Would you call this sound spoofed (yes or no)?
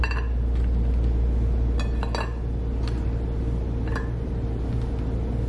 no